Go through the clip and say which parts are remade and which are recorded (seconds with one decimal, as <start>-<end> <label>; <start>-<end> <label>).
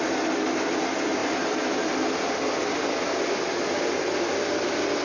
0.0-5.0 recorded